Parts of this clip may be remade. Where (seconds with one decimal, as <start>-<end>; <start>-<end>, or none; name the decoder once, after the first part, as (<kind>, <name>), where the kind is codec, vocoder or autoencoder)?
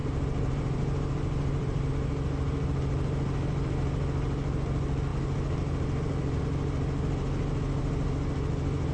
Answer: 0.0-1.9 (vocoder, BigVGAN v2)